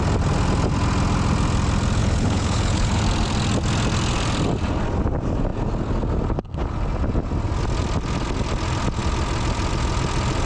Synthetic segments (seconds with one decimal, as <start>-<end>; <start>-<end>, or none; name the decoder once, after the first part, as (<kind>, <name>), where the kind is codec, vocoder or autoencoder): 2.0-3.0 (codec, HILCodec)